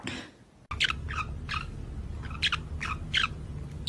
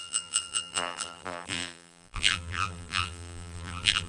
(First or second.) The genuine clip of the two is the first